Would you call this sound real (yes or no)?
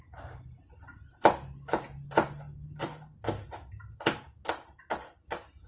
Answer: yes